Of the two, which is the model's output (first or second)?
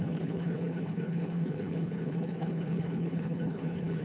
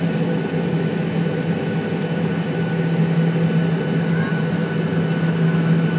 first